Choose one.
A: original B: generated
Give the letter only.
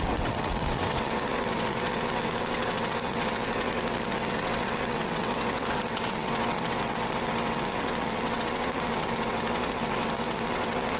B